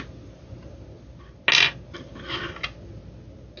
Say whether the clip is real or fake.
real